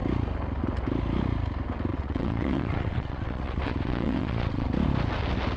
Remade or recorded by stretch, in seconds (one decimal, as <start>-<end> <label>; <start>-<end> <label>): 0.0-1.9 recorded; 1.9-4.7 remade; 4.7-5.6 recorded